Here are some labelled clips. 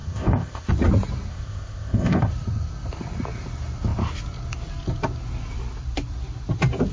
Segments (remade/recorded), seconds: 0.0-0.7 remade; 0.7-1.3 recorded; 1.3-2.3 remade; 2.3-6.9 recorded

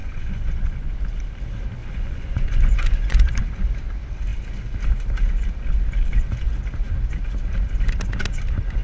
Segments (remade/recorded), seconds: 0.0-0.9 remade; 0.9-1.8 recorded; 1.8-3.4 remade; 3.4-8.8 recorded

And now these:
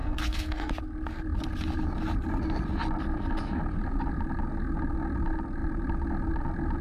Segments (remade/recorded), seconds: 0.0-0.7 remade; 0.7-6.8 recorded